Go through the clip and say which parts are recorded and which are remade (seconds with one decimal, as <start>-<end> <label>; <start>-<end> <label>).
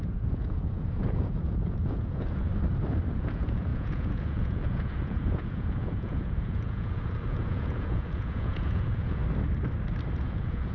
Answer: 0.0-2.5 remade; 2.5-3.1 recorded; 3.1-9.2 remade; 9.2-10.2 recorded; 10.2-10.7 remade